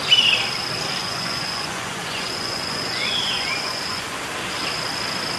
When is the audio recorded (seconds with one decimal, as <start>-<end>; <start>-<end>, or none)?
0.0-1.0; 4.2-5.4